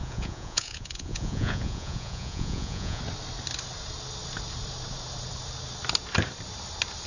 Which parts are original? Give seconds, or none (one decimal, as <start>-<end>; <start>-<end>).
3.0-7.1